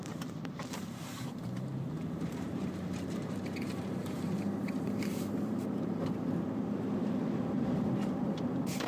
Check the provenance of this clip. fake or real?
fake